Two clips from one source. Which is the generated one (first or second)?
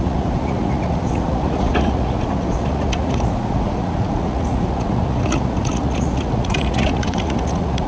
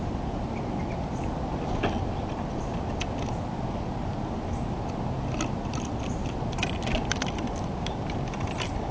first